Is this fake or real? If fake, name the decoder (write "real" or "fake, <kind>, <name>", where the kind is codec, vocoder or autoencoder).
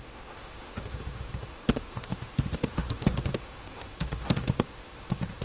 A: fake, autoencoder, DAC-VAE